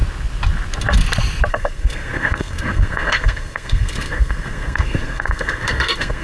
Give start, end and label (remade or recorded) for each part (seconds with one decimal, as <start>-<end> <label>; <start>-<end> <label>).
0.0-1.5 recorded; 1.5-6.2 remade

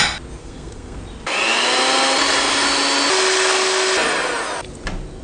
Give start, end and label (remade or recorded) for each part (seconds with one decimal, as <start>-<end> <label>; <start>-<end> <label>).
0.0-0.4 recorded; 0.4-1.0 remade; 1.0-5.2 recorded

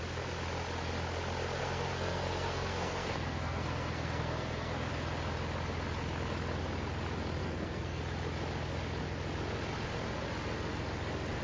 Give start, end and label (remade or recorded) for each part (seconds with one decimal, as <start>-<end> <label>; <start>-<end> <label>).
0.0-1.6 recorded; 1.6-4.9 remade; 4.9-7.4 recorded; 7.4-8.0 remade; 8.0-11.4 recorded

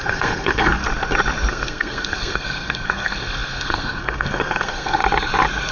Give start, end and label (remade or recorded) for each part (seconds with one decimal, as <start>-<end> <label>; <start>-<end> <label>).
0.0-0.8 remade; 0.8-1.5 recorded; 1.5-5.0 remade; 5.0-5.7 recorded